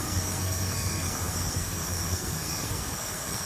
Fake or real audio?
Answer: fake